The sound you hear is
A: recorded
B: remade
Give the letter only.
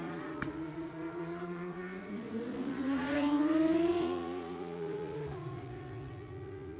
B